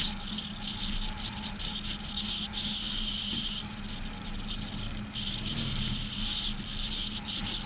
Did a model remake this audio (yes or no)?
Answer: no